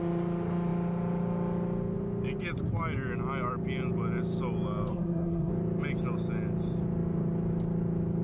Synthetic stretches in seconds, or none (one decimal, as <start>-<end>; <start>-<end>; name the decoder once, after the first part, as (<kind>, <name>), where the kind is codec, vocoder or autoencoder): 4.9-5.5 (codec, SNAC)